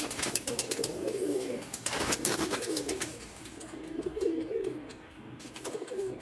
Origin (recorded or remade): remade